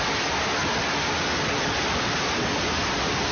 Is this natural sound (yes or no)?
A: yes